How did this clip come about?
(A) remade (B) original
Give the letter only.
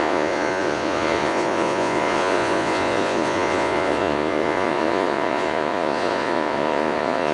A